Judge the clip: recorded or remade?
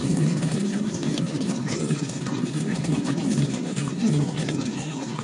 remade